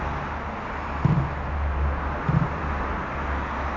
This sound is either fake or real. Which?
real